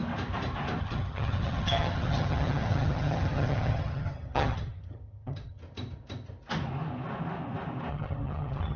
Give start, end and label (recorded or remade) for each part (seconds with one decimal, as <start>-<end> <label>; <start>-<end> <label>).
0.0-0.8 recorded; 0.8-5.6 remade; 5.6-7.9 recorded; 7.9-8.8 remade